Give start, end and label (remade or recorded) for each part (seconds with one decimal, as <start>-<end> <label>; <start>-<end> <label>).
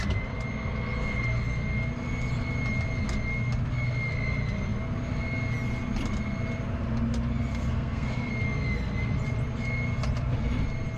0.0-7.5 recorded; 7.5-8.3 remade; 8.3-11.0 recorded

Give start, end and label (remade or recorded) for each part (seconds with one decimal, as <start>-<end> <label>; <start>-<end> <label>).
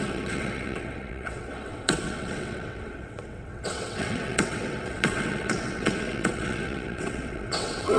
0.0-8.0 remade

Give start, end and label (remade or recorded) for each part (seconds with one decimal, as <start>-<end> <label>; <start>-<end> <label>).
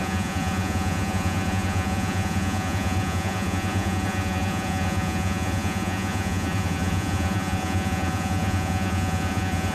0.0-9.7 remade